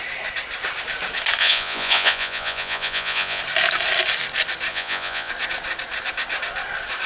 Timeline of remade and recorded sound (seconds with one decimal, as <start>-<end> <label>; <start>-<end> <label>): 0.0-1.4 recorded; 1.4-3.4 remade; 3.4-4.7 recorded; 4.7-5.3 remade; 5.3-7.1 recorded